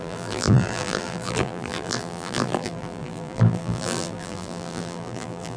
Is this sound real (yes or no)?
no